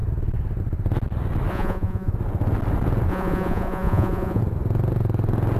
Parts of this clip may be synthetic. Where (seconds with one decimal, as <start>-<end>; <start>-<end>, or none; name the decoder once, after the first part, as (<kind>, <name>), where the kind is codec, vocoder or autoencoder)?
1.5-2.1 (vocoder, Vocos); 3.1-4.4